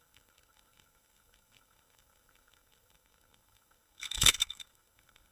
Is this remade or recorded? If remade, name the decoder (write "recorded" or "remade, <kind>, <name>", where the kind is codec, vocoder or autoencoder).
remade, codec, SNAC